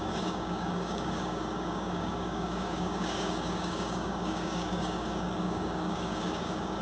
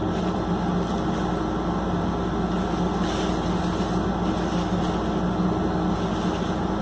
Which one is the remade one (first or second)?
first